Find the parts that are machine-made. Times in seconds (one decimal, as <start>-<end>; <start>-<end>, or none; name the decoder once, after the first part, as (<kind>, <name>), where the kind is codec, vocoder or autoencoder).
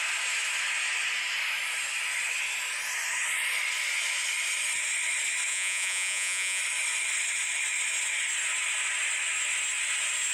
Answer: 5.5-6.6 (vocoder, Vocos)